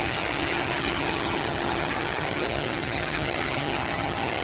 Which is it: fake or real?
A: fake